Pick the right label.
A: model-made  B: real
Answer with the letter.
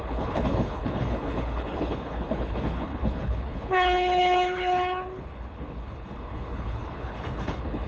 A